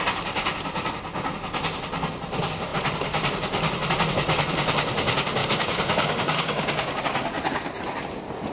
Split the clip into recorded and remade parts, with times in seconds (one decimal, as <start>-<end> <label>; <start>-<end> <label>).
0.0-5.4 recorded; 5.4-7.0 remade; 7.0-8.5 recorded